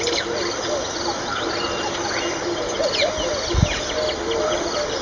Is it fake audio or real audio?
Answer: real